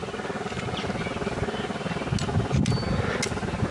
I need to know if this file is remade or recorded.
recorded